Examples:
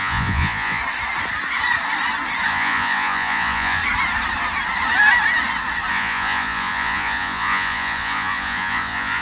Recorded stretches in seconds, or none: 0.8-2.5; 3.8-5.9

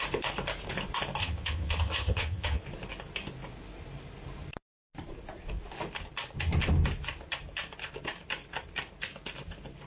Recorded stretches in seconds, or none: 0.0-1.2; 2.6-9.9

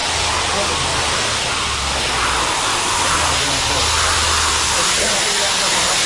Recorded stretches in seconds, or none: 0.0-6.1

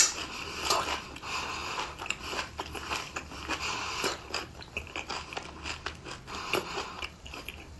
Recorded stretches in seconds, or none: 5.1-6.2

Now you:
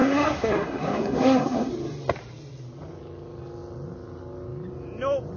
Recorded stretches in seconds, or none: 1.7-5.4

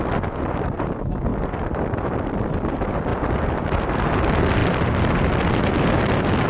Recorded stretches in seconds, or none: 0.0-1.3; 2.5-3.1; 4.1-4.6; 5.7-6.5